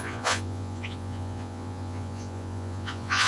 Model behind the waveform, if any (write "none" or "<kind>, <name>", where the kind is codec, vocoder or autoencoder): vocoder, Vocos